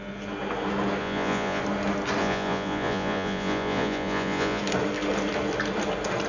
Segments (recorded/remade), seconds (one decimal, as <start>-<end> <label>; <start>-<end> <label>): 0.0-1.0 recorded; 1.0-1.6 remade; 1.6-2.2 recorded; 2.2-4.6 remade; 4.6-6.3 recorded